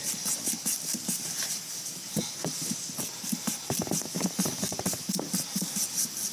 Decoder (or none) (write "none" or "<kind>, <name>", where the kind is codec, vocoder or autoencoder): none